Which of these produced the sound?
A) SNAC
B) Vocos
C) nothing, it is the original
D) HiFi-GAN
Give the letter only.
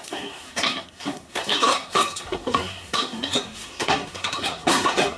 A